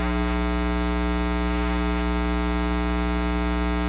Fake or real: real